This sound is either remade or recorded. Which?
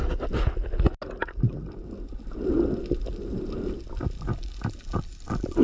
recorded